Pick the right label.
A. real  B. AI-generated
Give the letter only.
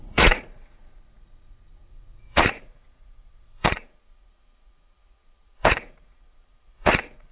B